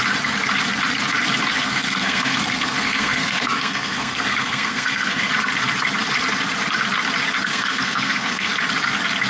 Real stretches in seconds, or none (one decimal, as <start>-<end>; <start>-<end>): 0.0-1.6; 5.3-7.5; 8.5-9.3